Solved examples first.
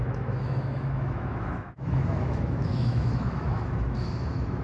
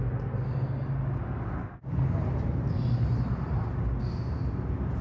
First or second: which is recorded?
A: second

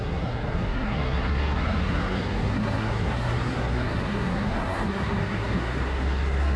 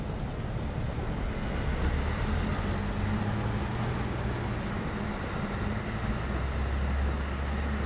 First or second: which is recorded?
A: second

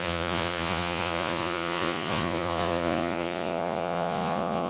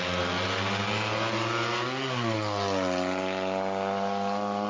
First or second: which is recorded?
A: second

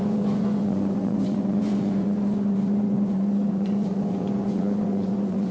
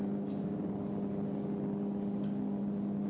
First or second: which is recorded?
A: second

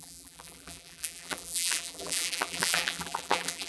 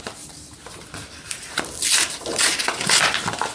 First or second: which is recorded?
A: second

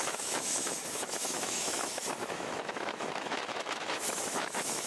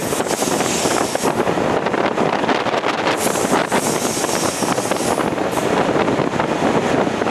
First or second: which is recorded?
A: second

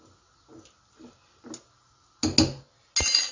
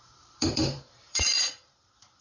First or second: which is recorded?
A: first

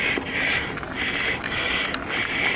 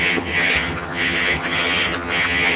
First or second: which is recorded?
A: first